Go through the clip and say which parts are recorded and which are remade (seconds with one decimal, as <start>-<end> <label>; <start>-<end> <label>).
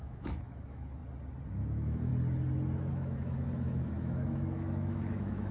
0.0-1.0 remade; 1.0-1.5 recorded; 1.5-2.1 remade; 2.1-2.9 recorded; 2.9-5.5 remade